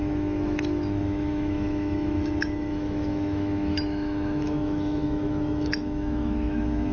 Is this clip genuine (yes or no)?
no